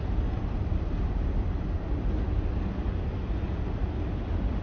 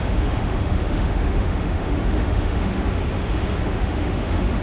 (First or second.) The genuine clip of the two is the first